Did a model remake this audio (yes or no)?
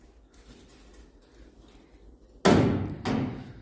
no